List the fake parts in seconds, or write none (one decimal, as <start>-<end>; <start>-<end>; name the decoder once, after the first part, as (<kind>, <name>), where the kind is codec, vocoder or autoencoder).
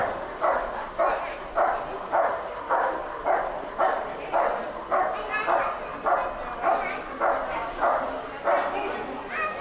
none